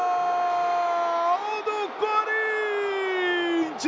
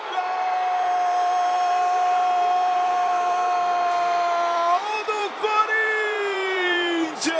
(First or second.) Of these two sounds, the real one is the first